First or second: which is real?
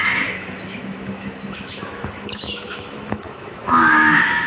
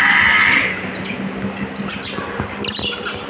second